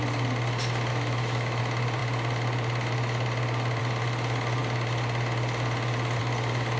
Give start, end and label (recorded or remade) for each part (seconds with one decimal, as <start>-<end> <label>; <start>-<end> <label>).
0.0-0.9 recorded; 0.9-1.6 remade; 1.6-6.8 recorded